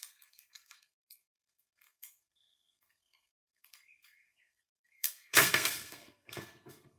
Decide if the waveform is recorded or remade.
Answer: remade